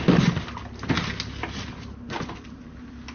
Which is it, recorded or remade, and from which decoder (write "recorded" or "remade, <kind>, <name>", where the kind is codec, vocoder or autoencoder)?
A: recorded